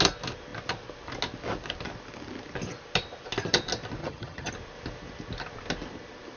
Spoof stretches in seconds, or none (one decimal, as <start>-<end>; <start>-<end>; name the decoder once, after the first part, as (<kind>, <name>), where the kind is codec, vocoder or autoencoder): 4.0-4.5 (vocoder, HiFi-GAN)